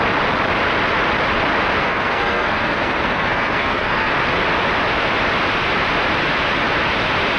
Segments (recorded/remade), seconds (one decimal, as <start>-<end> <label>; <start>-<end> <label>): 0.0-1.8 recorded; 1.8-4.1 remade; 4.1-7.4 recorded